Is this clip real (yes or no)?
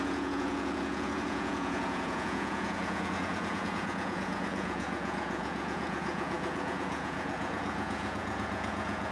no